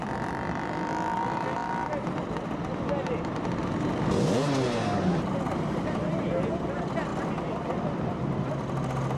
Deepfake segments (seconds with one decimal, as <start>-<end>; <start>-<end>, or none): none